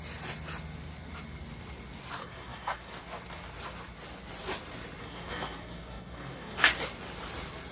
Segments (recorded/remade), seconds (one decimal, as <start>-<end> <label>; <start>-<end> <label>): 0.0-2.2 recorded; 2.2-2.9 remade; 2.9-5.0 recorded; 5.0-6.6 remade; 6.6-7.7 recorded